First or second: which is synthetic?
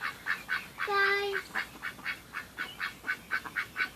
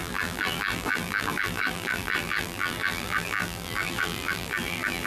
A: second